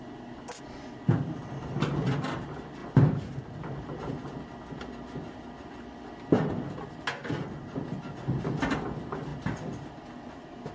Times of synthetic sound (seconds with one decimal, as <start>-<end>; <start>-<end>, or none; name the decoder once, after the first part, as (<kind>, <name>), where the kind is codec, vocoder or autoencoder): none